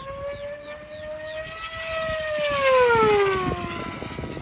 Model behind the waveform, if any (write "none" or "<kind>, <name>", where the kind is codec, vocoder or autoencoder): none